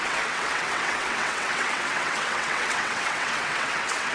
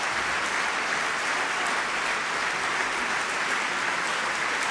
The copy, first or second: first